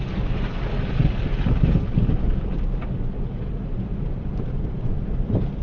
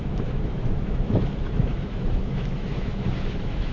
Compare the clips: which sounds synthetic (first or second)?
second